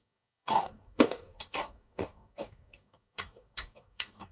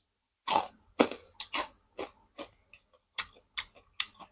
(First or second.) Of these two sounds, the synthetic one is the first